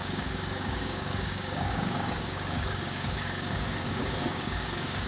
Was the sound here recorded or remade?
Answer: remade